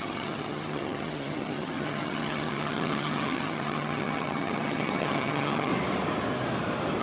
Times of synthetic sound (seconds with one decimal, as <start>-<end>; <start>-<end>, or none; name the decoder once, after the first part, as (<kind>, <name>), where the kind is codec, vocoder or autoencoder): 0.0-5.7 (vocoder, HiFi-GAN)